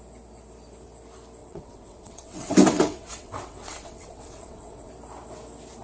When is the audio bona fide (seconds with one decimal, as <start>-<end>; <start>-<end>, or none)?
0.0-1.4; 4.9-5.8